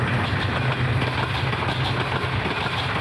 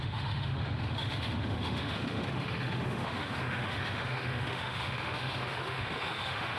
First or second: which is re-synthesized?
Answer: second